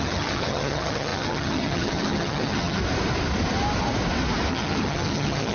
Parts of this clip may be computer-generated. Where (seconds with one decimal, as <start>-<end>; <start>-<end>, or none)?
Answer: 0.0-2.8; 4.5-5.5